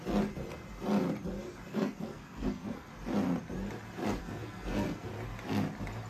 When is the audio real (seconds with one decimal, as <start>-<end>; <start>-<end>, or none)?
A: 0.0-1.7; 2.9-4.2; 5.1-6.1